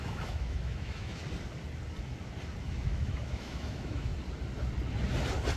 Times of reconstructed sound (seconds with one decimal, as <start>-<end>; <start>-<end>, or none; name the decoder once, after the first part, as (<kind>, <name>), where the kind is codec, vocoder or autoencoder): 0.0-1.2 (autoencoder, DAC-VAE); 2.6-4.1